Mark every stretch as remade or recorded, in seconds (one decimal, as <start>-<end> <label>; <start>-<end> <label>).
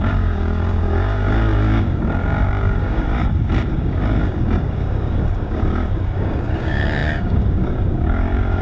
0.0-8.6 remade